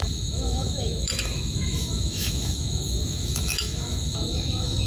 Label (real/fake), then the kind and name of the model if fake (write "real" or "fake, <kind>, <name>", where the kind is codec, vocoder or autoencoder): fake, autoencoder, DAC-VAE